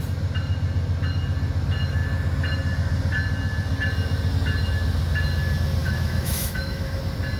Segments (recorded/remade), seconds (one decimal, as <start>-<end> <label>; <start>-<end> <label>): 0.0-5.8 recorded; 5.8-7.0 remade; 7.0-7.4 recorded